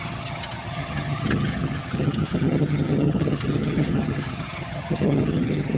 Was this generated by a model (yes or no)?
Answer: yes